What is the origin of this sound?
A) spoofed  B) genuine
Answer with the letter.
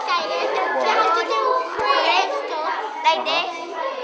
B